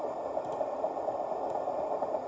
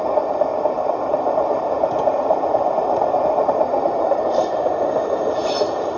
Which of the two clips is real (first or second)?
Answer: first